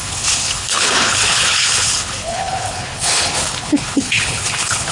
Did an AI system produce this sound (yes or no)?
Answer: yes